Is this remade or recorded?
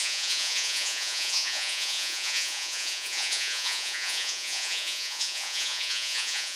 remade